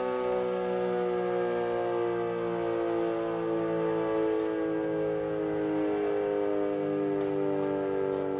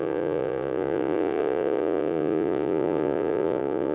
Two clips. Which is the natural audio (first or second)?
first